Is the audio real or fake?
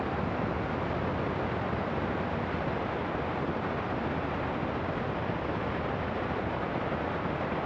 real